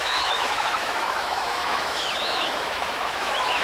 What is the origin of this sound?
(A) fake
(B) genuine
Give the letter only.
A